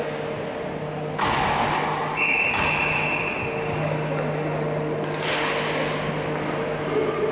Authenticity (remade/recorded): recorded